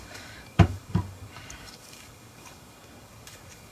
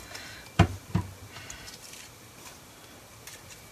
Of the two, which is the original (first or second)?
second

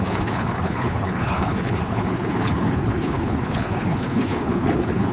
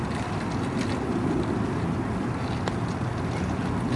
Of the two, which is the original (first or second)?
second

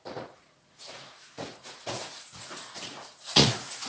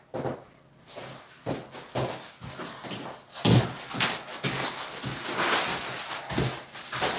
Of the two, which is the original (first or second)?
second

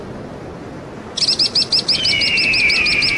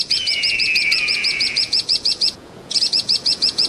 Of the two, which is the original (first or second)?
first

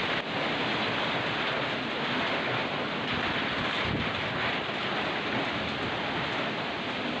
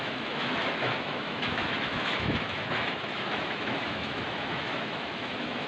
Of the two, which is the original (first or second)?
first